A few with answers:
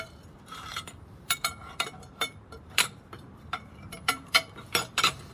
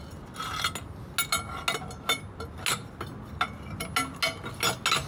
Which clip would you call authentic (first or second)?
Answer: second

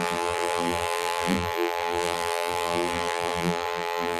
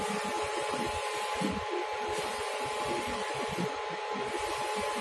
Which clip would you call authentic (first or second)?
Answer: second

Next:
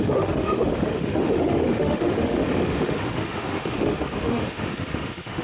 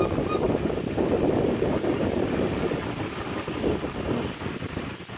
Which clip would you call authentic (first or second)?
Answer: second